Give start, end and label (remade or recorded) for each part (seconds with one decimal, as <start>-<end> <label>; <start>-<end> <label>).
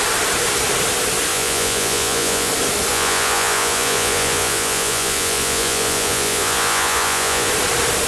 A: 0.0-1.3 recorded; 1.3-2.5 remade; 2.5-2.9 recorded; 2.9-7.5 remade; 7.5-8.1 recorded